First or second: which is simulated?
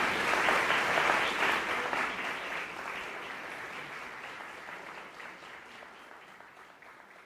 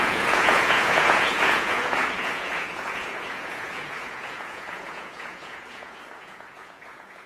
second